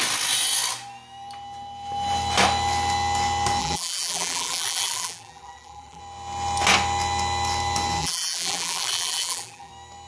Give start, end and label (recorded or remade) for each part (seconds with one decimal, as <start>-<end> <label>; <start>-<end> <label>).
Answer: 0.0-3.6 recorded; 3.6-6.0 remade; 6.0-8.0 recorded; 8.0-9.7 remade; 9.7-10.1 recorded